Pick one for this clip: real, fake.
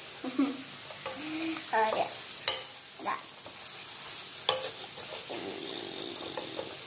real